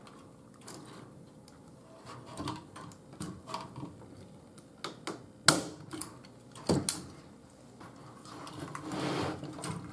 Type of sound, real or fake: real